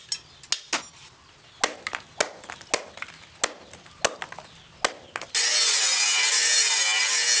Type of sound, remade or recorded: recorded